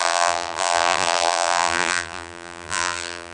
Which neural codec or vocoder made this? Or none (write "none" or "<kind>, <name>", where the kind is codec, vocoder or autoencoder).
vocoder, BigVGAN v2